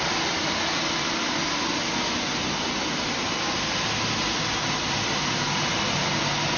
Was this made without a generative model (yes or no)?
yes